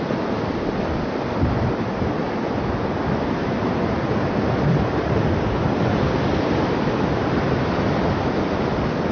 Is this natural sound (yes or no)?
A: no